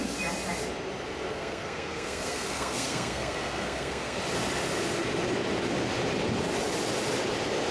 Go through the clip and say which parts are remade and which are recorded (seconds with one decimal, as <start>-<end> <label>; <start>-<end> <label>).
0.0-1.3 recorded; 1.3-4.2 remade; 4.2-7.7 recorded